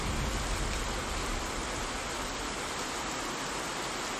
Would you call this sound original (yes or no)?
yes